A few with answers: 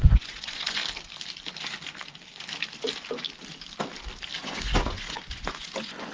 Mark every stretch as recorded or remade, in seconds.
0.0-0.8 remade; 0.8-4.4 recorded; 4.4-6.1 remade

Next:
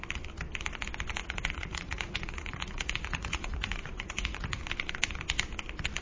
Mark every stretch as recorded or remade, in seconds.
0.0-1.2 recorded; 1.2-4.6 remade; 4.6-6.0 recorded

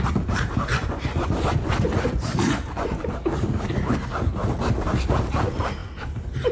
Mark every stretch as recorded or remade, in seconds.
0.0-0.7 recorded; 0.7-3.1 remade; 3.1-6.5 recorded

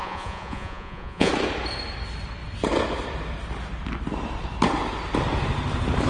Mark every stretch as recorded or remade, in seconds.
0.0-1.3 remade; 1.3-6.1 recorded

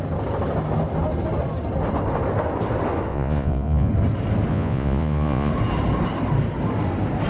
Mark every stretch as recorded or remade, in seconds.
0.0-3.1 recorded; 3.1-3.9 remade; 3.9-4.5 recorded; 4.5-5.5 remade; 5.5-7.3 recorded